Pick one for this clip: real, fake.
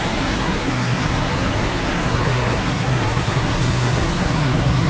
fake